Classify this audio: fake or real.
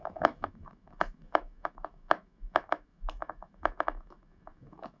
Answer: fake